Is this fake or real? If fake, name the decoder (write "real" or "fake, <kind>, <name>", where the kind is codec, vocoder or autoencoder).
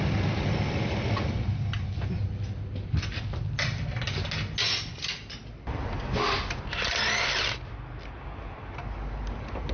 real